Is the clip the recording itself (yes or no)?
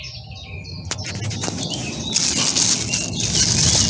yes